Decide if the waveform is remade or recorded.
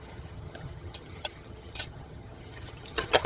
remade